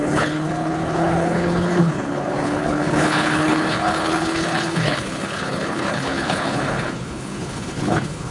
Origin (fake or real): fake